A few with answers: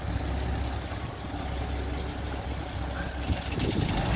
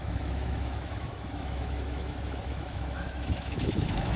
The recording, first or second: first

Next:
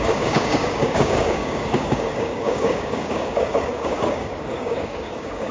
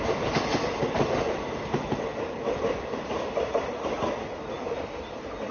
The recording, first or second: second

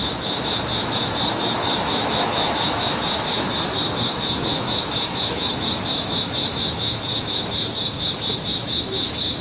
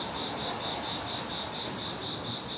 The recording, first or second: second